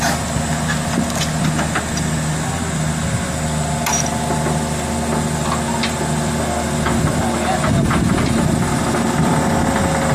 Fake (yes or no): no